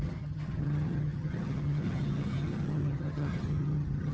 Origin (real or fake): fake